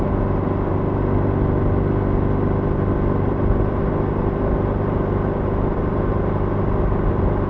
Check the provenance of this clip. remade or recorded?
recorded